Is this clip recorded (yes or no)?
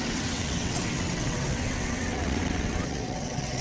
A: no